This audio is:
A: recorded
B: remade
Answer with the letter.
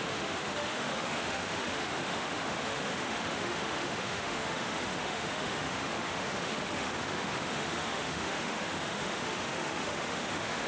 B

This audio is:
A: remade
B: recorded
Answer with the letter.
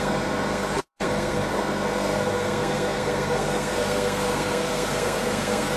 A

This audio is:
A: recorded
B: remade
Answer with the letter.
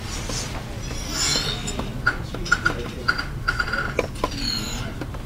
A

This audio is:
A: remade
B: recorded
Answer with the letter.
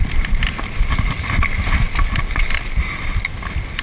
B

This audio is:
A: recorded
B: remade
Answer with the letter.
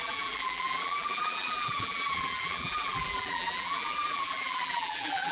B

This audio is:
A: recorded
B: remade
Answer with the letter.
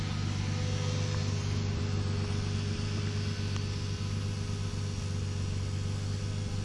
A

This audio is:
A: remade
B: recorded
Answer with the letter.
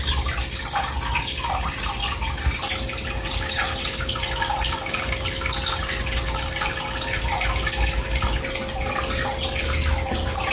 B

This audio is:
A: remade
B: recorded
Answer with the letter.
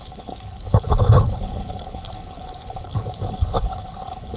A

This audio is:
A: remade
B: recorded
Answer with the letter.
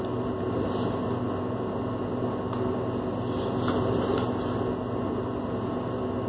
B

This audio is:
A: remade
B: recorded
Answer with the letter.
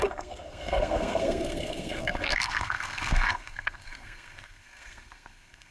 A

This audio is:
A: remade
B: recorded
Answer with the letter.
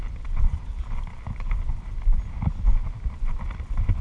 B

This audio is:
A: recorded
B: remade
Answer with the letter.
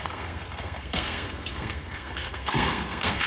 B